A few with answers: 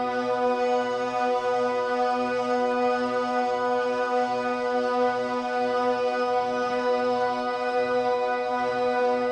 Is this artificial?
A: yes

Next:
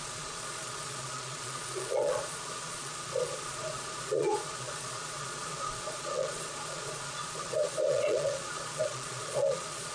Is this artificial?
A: yes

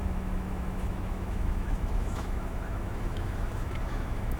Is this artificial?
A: yes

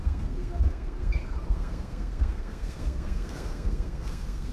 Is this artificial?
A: yes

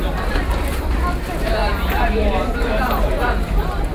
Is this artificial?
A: no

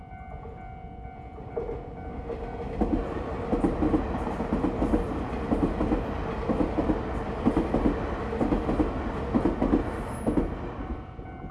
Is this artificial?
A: no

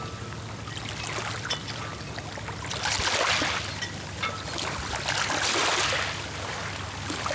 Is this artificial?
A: no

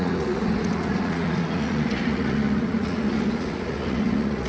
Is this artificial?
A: yes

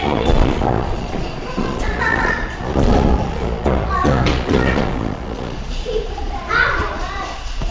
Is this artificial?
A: yes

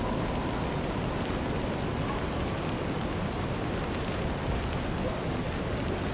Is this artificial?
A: no